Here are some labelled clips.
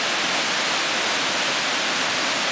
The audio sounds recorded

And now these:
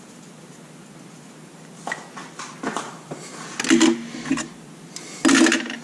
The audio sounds recorded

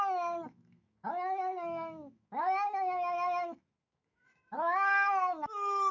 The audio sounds remade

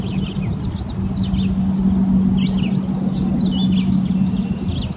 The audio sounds recorded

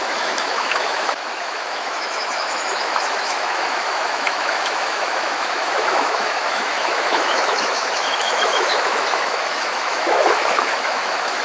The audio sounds remade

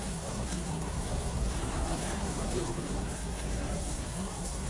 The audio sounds remade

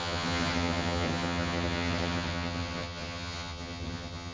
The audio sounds remade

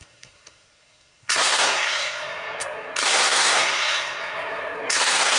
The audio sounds remade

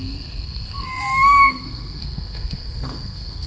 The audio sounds remade